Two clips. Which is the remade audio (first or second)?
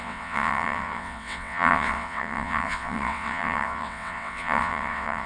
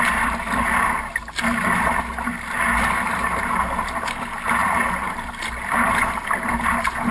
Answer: first